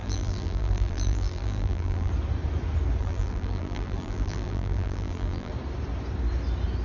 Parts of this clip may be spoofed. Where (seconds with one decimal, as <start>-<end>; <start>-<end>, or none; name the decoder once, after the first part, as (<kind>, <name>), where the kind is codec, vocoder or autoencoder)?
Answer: 0.0-2.1 (vocoder, BigVGAN v2); 3.0-5.5